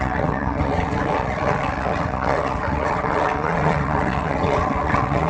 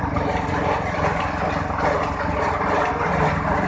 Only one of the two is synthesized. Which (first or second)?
first